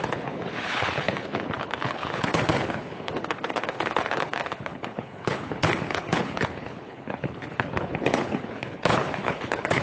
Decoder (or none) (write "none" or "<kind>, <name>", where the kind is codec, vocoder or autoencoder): codec, HILCodec